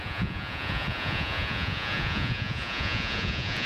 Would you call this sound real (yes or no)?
no